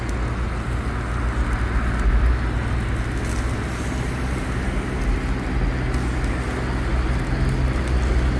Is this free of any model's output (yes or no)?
yes